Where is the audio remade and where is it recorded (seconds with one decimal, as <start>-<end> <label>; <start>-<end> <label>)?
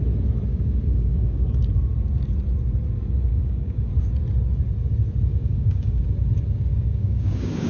0.0-0.5 recorded; 0.5-1.6 remade; 1.6-3.3 recorded; 3.3-3.9 remade; 3.9-5.3 recorded; 5.3-6.0 remade; 6.0-6.7 recorded; 6.7-7.7 remade